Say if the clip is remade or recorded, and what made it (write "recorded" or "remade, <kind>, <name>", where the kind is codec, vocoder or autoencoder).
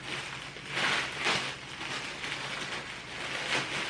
recorded